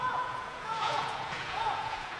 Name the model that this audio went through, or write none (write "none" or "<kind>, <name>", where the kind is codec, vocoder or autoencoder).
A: vocoder, Vocos